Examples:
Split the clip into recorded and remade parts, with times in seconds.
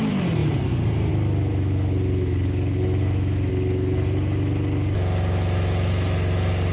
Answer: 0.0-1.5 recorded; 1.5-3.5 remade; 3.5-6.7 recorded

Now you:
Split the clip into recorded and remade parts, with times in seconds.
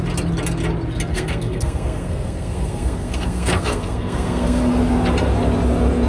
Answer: 0.0-1.1 recorded; 1.1-4.6 remade; 4.6-6.1 recorded